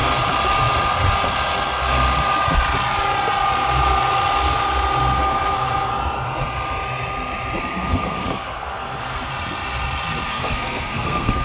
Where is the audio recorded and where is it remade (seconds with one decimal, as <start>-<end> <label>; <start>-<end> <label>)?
0.0-5.2 recorded; 5.2-5.9 remade; 5.9-7.6 recorded; 7.6-9.3 remade; 9.3-10.3 recorded; 10.3-11.4 remade